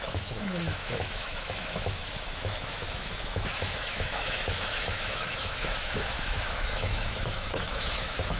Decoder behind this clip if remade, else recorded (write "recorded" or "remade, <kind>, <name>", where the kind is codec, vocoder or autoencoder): remade, autoencoder, DAC-VAE